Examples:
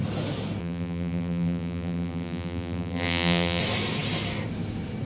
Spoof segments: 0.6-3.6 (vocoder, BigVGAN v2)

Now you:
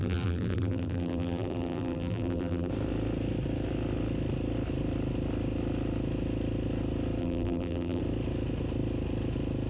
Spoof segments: 0.0-2.7 (vocoder, BigVGAN v2); 7.2-8.0

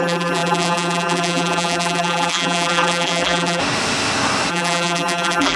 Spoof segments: 0.0-3.6 (vocoder, BigVGAN v2); 4.5-5.6